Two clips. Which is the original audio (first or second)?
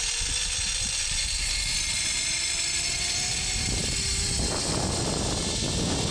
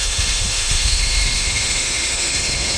first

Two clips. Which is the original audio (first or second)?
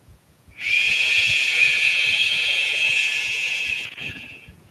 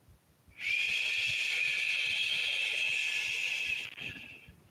second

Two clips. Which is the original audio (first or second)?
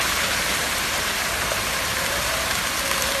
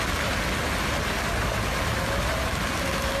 second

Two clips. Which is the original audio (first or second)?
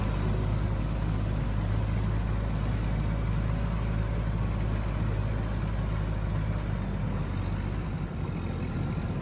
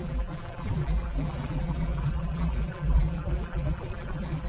first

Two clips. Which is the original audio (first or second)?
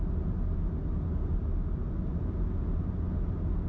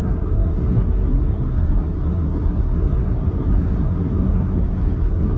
first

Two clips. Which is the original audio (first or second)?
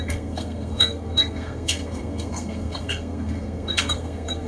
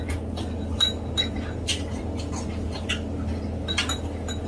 second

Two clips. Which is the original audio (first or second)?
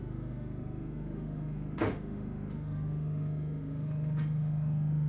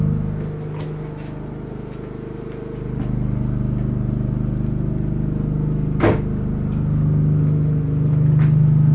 second